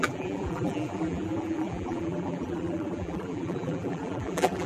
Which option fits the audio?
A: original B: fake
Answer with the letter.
B